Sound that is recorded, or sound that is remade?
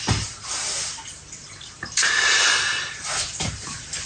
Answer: remade